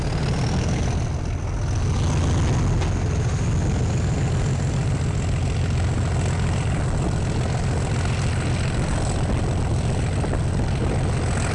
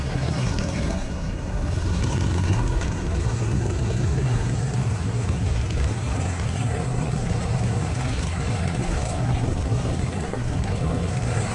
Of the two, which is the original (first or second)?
first